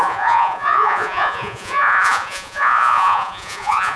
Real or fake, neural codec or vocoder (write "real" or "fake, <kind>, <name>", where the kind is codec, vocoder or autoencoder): fake, vocoder, Vocos